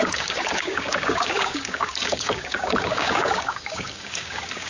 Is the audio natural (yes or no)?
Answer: no